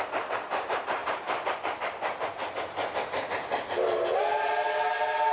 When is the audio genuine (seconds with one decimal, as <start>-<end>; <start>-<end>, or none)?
0.0-1.0; 4.2-5.3